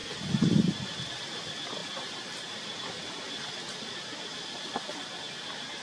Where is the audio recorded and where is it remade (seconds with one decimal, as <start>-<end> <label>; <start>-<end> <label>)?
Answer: 0.0-5.8 recorded